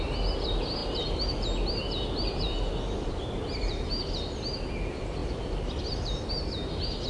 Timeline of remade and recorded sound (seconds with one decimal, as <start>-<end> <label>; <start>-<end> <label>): 0.0-7.1 recorded